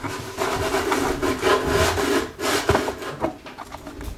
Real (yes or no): yes